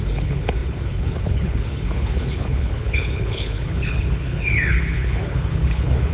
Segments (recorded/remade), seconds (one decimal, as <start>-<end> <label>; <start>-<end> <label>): 0.0-6.1 remade